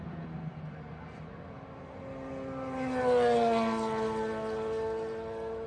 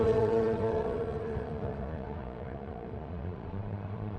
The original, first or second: first